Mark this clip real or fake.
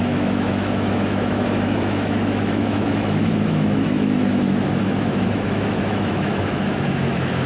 fake